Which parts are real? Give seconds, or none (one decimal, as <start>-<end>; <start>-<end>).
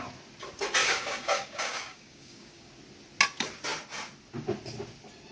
0.0-0.8; 2.7-5.3